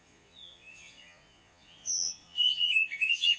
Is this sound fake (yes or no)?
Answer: yes